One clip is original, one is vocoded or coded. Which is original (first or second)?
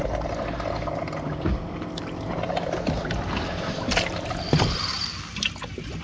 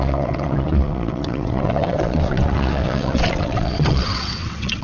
first